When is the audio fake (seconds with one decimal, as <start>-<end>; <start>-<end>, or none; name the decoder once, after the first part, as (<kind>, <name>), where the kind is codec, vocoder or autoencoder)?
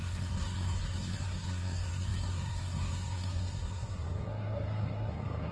0.0-5.5 (codec, SNAC)